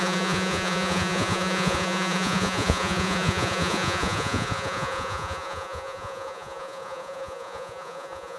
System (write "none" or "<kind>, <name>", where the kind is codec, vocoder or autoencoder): vocoder, Vocos